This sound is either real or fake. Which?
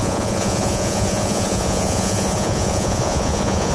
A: fake